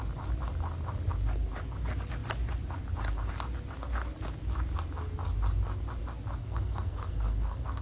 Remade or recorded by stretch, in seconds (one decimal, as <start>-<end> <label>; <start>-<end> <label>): 0.0-6.4 recorded; 6.4-7.8 remade